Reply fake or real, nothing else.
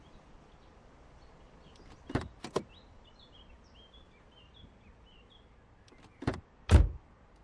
fake